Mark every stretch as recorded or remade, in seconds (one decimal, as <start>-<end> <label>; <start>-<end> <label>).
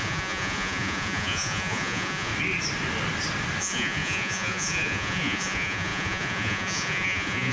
0.0-2.3 remade; 2.3-3.6 recorded; 3.6-7.5 remade